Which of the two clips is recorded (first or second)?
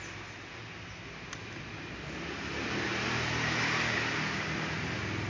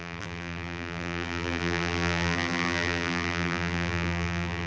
first